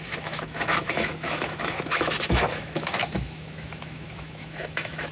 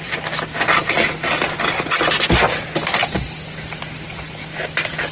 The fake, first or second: first